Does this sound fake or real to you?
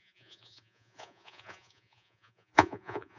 fake